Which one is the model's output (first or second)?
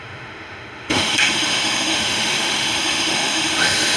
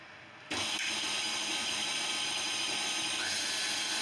first